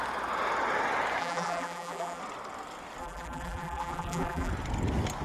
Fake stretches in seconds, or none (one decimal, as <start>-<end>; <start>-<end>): 1.2-2.2; 3.0-4.5